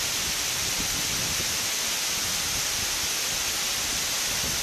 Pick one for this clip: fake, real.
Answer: real